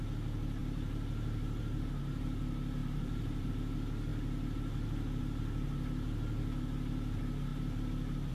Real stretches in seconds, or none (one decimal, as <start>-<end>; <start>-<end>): 0.0-2.8; 3.5-8.3